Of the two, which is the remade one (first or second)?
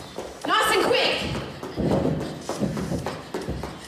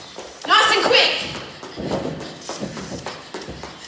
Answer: second